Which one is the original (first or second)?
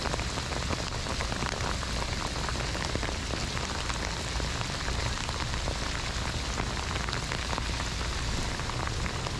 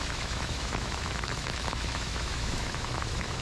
first